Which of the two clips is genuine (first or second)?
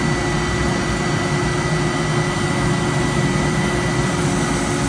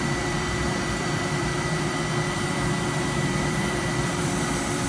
first